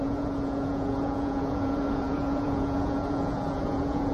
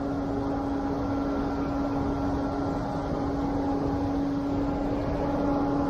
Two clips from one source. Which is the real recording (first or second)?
second